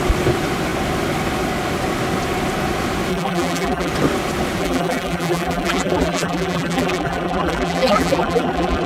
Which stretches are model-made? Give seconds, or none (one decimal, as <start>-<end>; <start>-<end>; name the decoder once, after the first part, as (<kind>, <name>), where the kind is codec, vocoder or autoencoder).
3.1-3.9 (vocoder, BigVGAN v2); 4.6-8.9